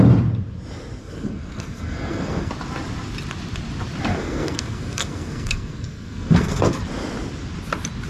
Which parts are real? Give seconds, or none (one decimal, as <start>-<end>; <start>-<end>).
0.0-1.0; 2.5-4.1; 6.8-8.1